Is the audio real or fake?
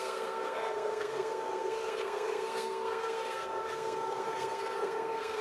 fake